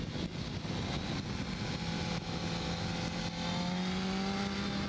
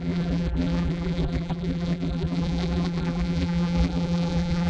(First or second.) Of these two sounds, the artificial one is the second